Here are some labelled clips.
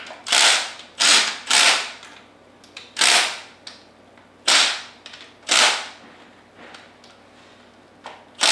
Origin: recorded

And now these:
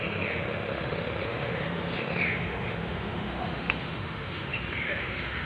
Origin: remade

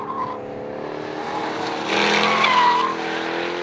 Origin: recorded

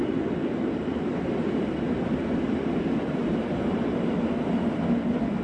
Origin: recorded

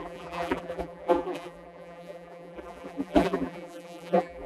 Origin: remade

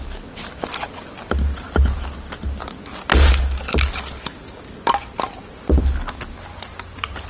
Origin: recorded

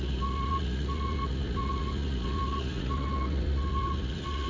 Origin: remade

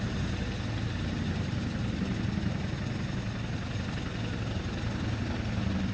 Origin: recorded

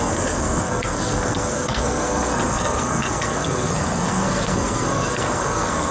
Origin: remade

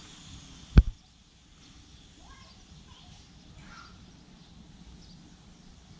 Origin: recorded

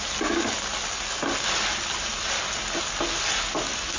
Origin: recorded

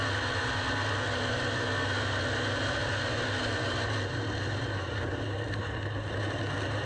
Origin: recorded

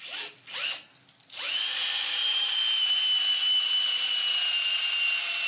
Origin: recorded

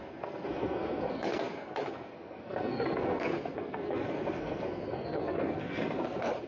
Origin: remade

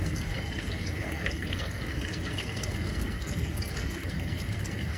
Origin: remade